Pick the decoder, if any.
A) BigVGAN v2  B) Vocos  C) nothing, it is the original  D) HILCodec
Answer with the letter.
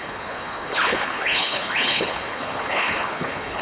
D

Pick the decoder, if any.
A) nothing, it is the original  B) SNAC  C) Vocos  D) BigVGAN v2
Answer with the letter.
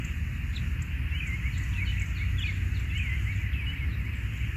A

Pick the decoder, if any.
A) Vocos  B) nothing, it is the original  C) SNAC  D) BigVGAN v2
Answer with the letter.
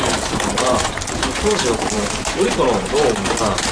B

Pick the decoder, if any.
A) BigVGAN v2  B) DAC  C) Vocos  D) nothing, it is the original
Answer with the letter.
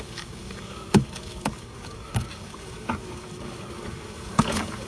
B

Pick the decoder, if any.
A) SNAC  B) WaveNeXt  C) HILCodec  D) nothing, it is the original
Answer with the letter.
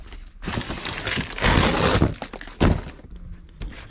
D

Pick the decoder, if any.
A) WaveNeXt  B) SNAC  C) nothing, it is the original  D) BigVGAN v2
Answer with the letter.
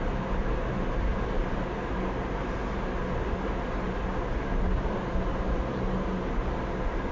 C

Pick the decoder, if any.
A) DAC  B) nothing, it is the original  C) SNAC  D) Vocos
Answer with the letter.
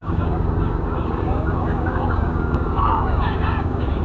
A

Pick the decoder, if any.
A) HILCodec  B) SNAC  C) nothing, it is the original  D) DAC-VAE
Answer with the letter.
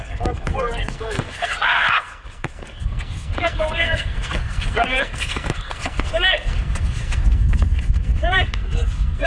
B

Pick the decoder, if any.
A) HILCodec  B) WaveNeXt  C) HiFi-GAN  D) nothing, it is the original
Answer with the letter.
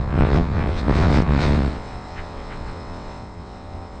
B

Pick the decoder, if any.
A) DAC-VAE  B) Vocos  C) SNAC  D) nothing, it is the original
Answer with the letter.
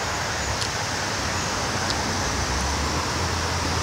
D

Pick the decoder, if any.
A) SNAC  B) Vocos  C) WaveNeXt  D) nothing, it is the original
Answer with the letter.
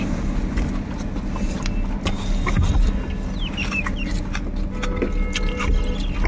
D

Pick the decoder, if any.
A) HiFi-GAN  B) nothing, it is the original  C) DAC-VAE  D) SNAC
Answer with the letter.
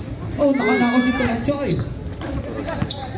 B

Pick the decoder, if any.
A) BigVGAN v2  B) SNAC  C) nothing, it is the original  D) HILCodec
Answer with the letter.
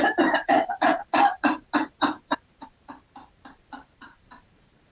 A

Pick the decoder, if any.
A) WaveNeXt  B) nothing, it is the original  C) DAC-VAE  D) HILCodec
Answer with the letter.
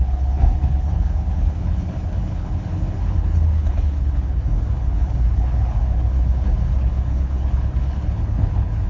D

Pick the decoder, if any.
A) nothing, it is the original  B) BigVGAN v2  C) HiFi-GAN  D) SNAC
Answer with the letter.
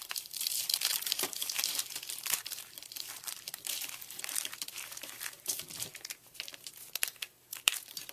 B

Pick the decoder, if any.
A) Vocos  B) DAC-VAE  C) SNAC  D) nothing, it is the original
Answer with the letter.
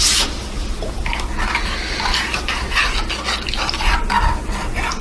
D